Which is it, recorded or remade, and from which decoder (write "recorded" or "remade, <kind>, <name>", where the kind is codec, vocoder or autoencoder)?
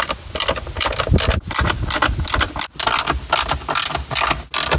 recorded